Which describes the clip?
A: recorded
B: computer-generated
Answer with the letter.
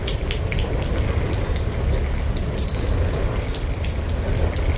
A